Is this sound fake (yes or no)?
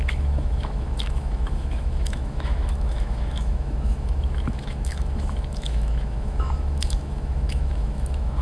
yes